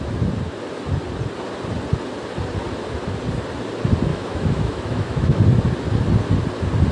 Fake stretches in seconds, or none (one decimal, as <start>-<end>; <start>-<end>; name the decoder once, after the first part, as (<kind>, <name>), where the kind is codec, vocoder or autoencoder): 4.1-5.4 (autoencoder, DAC-VAE)